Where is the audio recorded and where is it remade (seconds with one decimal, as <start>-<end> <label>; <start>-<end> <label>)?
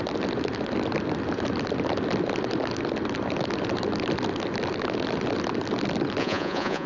0.0-6.2 recorded; 6.2-6.9 remade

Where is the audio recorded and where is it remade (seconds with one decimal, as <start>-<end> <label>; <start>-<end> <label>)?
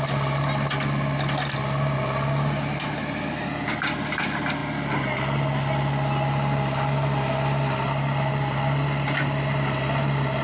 0.0-10.4 recorded